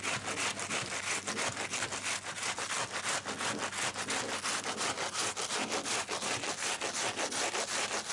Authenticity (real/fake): real